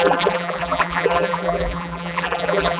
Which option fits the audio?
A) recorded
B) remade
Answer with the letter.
B